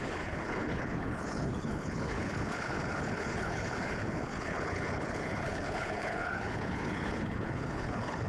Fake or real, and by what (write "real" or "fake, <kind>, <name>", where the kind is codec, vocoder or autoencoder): fake, codec, HILCodec